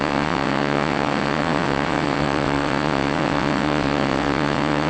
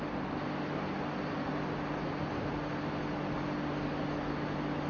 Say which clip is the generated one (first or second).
first